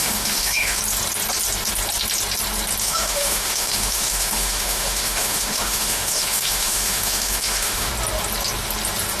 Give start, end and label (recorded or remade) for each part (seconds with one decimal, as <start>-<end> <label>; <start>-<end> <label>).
0.0-0.8 remade; 0.8-2.8 recorded; 2.8-7.9 remade; 7.9-9.2 recorded

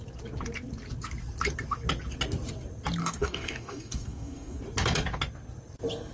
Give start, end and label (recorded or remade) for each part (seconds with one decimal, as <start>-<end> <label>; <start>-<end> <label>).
0.0-3.0 recorded; 3.0-4.6 remade; 4.6-6.1 recorded

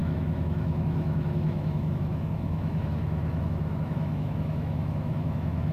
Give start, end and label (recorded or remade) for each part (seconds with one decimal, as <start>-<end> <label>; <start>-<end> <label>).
0.0-5.7 remade

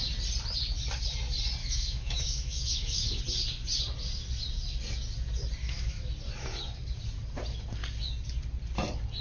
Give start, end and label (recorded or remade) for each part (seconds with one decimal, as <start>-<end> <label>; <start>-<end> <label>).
0.0-1.6 recorded; 1.6-3.2 remade; 3.2-5.6 recorded; 5.6-6.1 remade; 6.1-9.2 recorded

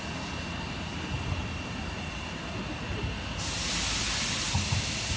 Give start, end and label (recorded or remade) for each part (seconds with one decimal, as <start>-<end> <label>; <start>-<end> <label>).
0.0-5.2 recorded